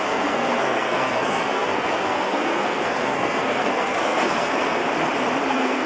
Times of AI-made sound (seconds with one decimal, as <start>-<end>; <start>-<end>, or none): 0.0-4.8; 5.5-5.9